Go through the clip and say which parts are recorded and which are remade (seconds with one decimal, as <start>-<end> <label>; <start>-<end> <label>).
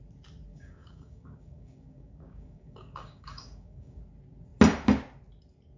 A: 0.0-0.5 recorded; 0.5-4.0 remade; 4.0-5.8 recorded